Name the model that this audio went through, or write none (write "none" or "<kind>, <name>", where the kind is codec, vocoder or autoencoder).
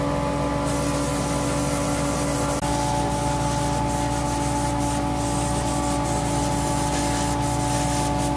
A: none